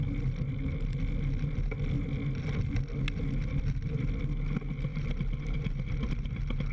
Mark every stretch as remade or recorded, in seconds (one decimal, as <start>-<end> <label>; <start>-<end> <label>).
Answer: 0.0-3.4 recorded; 3.4-4.2 remade; 4.2-4.9 recorded; 4.9-6.1 remade; 6.1-6.7 recorded